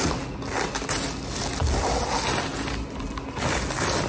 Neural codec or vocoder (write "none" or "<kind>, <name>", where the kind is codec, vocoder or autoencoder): none